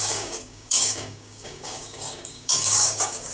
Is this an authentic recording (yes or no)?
no